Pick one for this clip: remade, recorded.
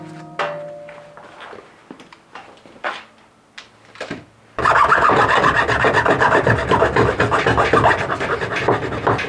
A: recorded